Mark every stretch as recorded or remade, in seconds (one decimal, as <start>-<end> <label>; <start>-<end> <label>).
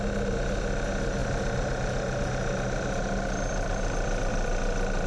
0.0-5.1 recorded